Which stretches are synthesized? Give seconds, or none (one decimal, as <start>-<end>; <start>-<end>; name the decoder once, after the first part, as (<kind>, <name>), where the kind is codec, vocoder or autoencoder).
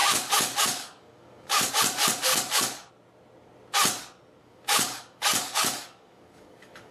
0.0-1.7 (codec, DAC); 2.3-2.9; 4.4-6.9